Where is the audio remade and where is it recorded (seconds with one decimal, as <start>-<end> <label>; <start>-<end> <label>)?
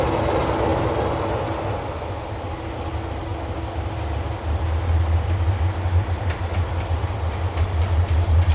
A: 0.0-8.5 recorded